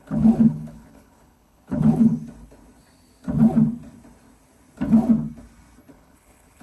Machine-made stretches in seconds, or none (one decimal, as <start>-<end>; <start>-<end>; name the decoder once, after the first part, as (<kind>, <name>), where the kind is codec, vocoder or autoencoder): 0.0-2.1 (codec, HILCodec); 5.9-6.6